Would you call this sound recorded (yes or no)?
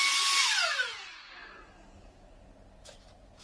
yes